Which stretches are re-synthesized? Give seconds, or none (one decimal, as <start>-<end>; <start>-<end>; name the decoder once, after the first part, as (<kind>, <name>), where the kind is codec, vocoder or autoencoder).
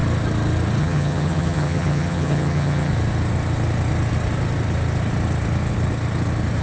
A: 0.8-2.9 (vocoder, HiFi-GAN)